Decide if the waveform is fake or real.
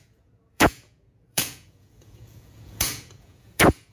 fake